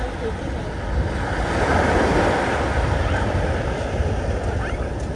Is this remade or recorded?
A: recorded